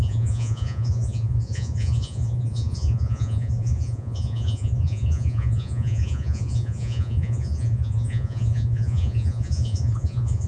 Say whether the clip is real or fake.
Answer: fake